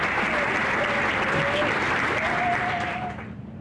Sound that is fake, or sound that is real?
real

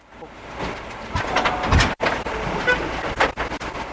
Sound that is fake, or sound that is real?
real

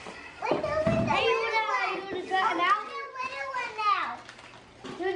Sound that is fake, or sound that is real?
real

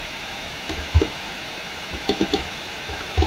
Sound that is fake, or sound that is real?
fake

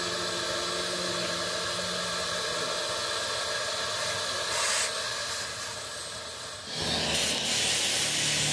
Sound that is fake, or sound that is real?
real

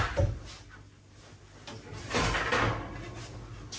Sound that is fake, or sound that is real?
real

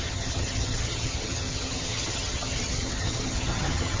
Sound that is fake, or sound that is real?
fake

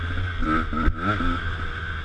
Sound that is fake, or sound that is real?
real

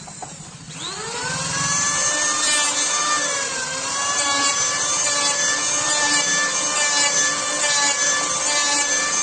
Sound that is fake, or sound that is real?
real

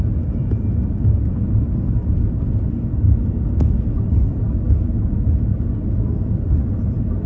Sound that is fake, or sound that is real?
real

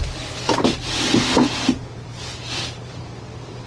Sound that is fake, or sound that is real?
fake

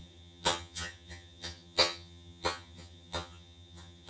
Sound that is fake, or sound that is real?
fake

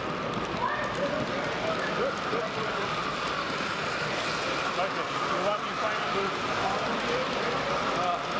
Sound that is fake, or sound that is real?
real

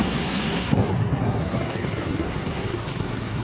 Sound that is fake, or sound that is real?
fake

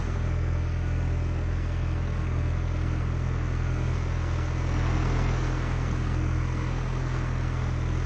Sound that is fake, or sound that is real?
fake